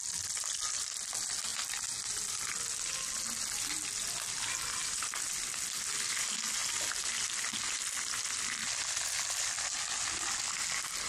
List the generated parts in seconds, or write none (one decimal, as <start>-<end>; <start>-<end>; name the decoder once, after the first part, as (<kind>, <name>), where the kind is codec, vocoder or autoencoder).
none